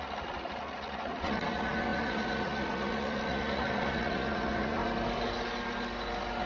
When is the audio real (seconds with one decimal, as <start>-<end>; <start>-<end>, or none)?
4.8-6.5